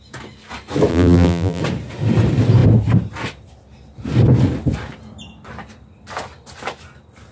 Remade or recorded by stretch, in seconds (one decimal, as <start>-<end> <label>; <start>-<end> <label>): 0.0-0.9 recorded; 0.9-1.6 remade; 1.6-7.3 recorded